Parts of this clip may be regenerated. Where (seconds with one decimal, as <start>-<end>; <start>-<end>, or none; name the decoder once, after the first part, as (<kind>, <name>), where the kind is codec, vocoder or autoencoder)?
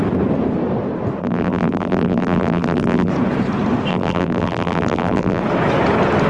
1.2-3.1 (vocoder, BigVGAN v2); 3.9-5.4